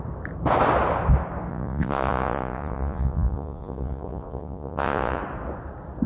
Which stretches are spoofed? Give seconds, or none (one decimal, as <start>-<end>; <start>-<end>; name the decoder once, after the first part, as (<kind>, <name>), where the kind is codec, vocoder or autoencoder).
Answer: 1.5-5.2 (vocoder, Vocos)